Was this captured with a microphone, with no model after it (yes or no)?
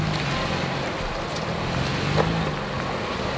yes